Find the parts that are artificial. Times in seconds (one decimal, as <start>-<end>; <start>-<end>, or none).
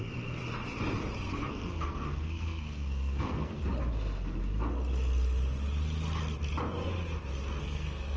0.0-0.4; 1.5-3.6; 7.6-8.2